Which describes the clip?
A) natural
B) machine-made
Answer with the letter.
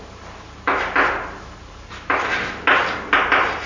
A